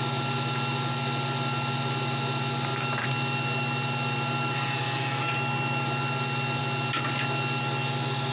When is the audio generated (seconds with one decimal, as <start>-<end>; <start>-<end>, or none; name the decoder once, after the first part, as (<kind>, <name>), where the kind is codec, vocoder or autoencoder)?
none